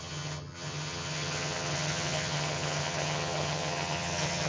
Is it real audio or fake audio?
fake